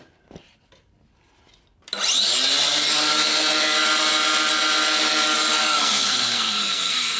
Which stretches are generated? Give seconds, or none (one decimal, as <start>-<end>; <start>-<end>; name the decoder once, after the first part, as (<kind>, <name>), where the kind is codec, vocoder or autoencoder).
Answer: 5.6-7.2 (codec, SNAC)

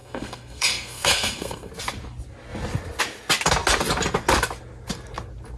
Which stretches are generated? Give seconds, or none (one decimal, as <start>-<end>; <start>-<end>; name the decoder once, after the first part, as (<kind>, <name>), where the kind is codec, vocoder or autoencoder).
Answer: 0.0-1.7 (codec, SNAC)